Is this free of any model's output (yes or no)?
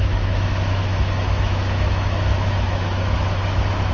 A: no